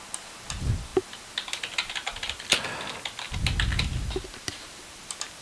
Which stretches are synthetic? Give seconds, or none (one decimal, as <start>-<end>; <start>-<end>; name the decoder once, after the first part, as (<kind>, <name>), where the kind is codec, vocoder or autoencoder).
none